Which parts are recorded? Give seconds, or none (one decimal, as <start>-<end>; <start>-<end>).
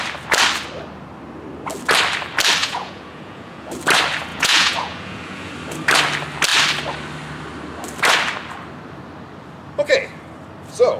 0.0-2.6; 3.7-4.3; 5.5-11.0